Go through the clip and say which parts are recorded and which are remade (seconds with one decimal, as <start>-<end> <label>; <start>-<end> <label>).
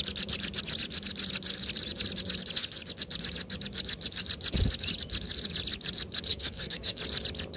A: 0.0-6.3 recorded; 6.3-7.0 remade; 7.0-7.6 recorded